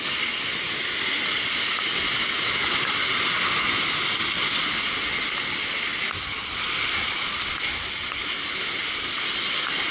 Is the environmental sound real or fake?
real